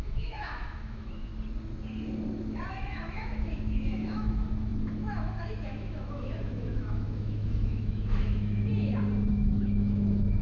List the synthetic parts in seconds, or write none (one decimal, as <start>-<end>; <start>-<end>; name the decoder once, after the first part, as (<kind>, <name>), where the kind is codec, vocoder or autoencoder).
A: 0.0-1.3 (autoencoder, DAC-VAE); 2.7-8.7; 9.3-10.4